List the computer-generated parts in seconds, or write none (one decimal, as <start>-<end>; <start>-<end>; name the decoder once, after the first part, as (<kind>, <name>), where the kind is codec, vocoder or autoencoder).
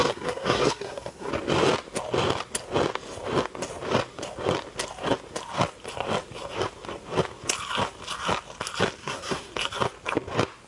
0.0-1.3 (codec, SNAC); 9.0-9.5